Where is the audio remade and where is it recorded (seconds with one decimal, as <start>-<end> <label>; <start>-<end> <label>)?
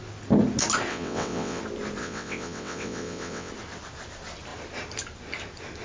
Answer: 0.0-0.9 recorded; 0.9-1.6 remade; 1.6-2.0 recorded; 2.0-3.5 remade; 3.5-5.8 recorded